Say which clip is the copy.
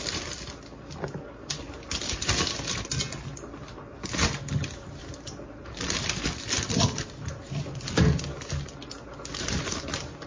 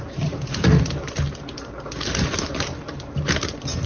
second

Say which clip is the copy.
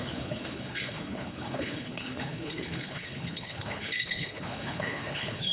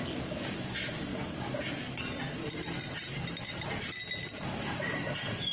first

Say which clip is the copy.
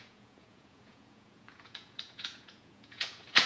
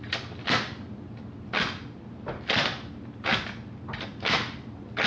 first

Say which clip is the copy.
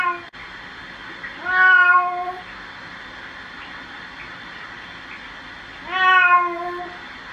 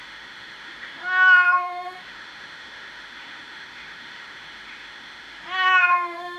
second